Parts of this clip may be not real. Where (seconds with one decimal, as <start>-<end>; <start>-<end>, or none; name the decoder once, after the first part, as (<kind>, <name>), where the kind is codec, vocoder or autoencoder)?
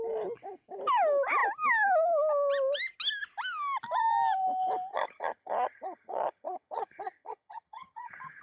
4.9-8.4 (vocoder, HiFi-GAN)